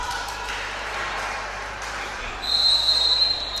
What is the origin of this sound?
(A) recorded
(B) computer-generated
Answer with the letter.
B